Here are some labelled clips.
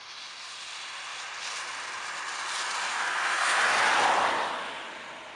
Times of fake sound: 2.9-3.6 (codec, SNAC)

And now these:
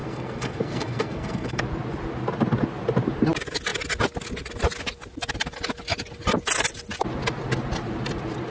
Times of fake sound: 0.0-1.6 (codec, SNAC)

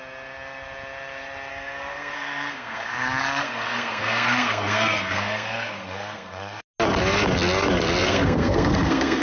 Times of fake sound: 1.5-6.6 (codec, SNAC); 8.0-9.2

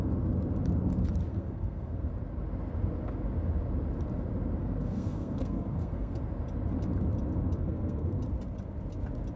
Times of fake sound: 1.3-2.1 (codec, SNAC); 4.6-6.2; 7.6-8.2

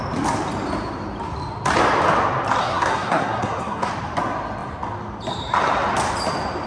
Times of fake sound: 2.6-3.9 (codec, SNAC)

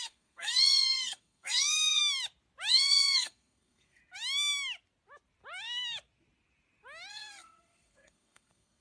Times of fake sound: 0.0-2.0 (codec, SNAC); 2.7-4.0; 7.1-8.8